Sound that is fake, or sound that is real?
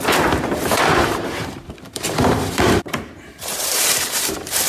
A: fake